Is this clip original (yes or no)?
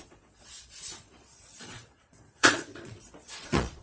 no